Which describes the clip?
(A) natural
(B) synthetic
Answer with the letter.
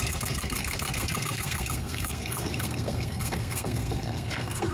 B